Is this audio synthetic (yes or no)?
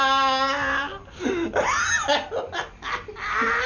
no